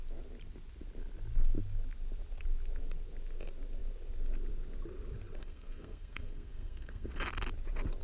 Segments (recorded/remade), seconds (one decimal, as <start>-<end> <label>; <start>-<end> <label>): 0.0-5.4 recorded; 5.4-7.1 remade; 7.1-8.0 recorded